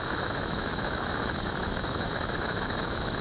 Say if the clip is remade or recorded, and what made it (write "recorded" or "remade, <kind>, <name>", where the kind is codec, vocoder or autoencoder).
remade, autoencoder, DAC-VAE